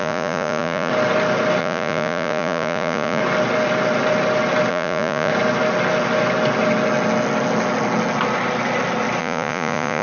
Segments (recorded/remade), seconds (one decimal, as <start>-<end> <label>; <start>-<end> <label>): 0.0-0.9 remade; 0.9-1.6 recorded; 1.6-3.2 remade; 3.2-4.7 recorded; 4.7-5.3 remade; 5.3-9.2 recorded; 9.2-10.0 remade